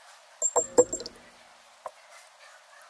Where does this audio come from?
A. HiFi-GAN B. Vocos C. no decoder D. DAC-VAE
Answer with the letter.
C